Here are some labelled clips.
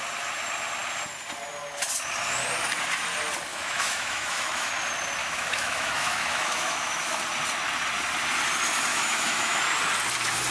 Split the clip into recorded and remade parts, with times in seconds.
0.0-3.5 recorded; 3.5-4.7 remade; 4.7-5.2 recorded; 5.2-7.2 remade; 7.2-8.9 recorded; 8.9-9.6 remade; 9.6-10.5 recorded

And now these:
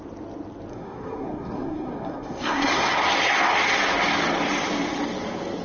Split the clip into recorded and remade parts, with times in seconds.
0.0-0.7 recorded; 0.7-3.0 remade; 3.0-5.6 recorded

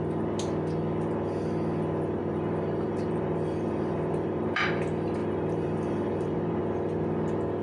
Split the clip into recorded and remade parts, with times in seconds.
0.0-2.2 recorded; 2.2-4.7 remade; 4.7-5.2 recorded; 5.2-6.6 remade; 6.6-7.6 recorded

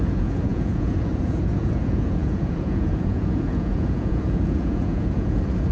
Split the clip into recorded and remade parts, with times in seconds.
0.0-5.7 remade